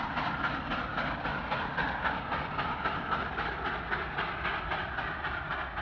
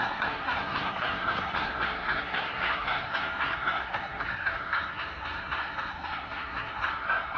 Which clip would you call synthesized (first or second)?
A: second